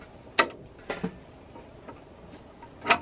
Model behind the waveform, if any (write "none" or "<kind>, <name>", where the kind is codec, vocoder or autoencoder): none